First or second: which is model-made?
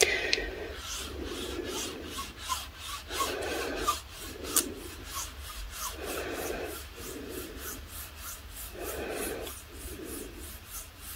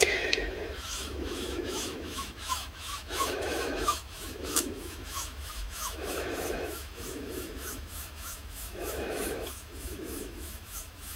second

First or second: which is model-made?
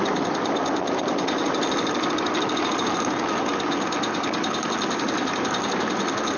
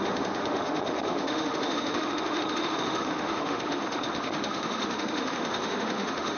second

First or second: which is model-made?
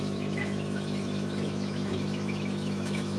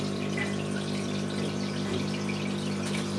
first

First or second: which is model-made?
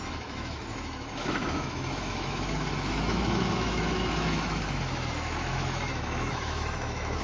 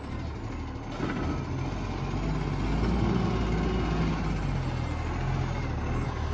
first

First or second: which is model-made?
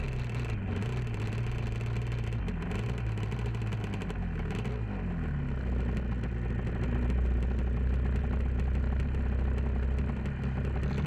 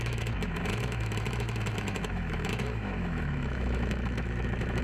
second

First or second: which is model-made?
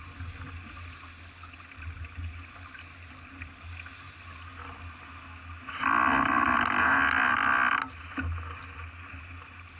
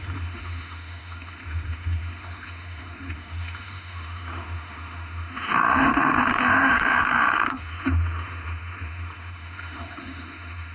second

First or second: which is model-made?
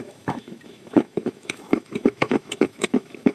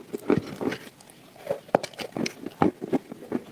first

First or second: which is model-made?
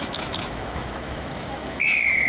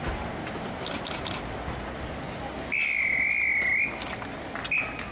first